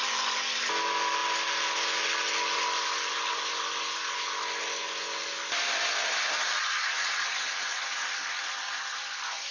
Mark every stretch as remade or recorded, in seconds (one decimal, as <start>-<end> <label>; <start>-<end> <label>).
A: 0.0-9.5 recorded